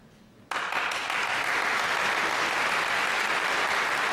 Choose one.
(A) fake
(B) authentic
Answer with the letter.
B